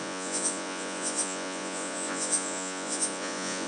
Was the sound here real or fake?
fake